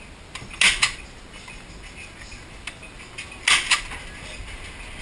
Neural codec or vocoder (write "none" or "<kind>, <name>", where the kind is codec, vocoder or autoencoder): none